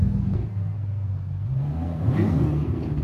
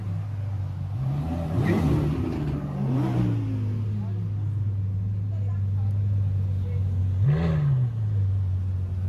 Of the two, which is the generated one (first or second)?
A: first